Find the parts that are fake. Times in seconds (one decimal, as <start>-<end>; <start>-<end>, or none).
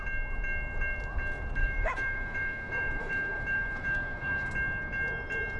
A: 1.6-4.5